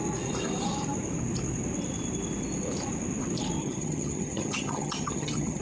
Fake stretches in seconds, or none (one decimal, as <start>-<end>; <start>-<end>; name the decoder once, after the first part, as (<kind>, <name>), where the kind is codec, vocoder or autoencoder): 3.6-5.6 (vocoder, HiFi-GAN)